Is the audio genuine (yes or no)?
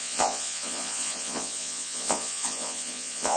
no